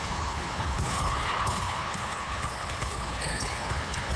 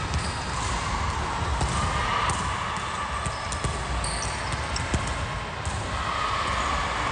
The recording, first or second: second